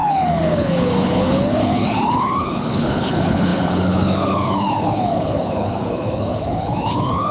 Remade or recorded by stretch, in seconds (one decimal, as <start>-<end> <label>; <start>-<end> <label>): 0.0-7.3 remade

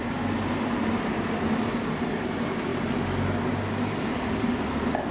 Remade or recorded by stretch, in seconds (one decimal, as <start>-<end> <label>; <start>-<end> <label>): 0.0-5.1 recorded

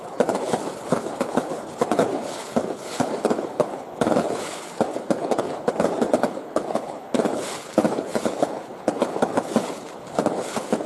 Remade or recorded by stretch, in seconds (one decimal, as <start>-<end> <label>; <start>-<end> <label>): 0.0-10.9 remade

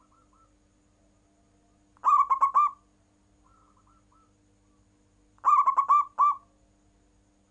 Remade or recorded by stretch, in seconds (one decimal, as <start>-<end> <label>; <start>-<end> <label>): 0.0-7.5 recorded

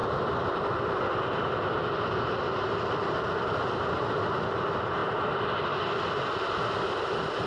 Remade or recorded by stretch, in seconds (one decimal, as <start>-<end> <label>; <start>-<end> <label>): 0.0-7.5 recorded

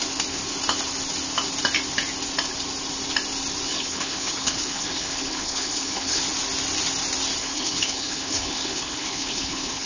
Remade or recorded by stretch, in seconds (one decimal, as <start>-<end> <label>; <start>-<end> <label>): 0.0-3.7 recorded; 3.7-6.2 remade; 6.2-7.4 recorded; 7.4-9.9 remade